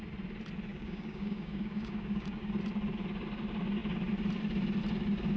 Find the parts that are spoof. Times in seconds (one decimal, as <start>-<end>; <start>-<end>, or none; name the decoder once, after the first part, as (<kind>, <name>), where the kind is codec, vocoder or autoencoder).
0.7-2.5 (codec, DAC)